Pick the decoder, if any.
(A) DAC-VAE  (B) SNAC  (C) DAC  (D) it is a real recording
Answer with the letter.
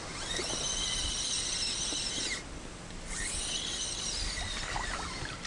D